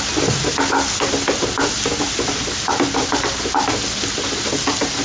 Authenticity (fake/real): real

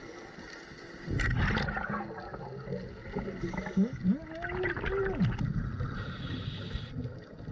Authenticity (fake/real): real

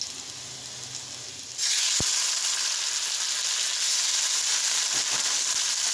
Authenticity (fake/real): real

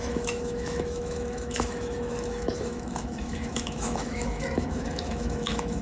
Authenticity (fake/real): fake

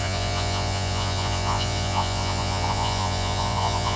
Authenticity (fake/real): fake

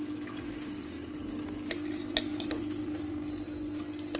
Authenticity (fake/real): real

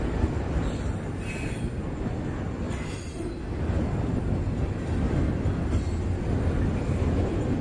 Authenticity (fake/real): real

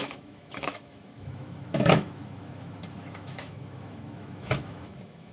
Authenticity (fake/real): fake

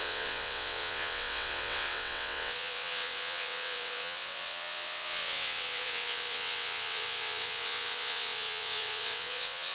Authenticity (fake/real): fake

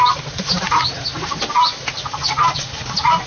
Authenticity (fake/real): real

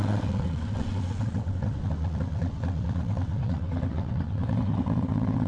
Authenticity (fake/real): fake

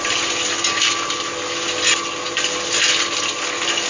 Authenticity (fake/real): real